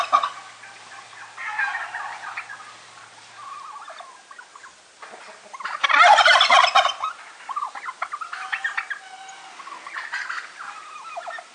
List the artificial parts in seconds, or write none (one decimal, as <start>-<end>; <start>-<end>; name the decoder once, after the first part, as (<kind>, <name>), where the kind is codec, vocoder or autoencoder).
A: none